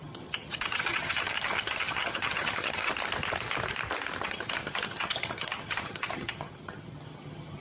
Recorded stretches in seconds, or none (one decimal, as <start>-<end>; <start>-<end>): 2.9-4.2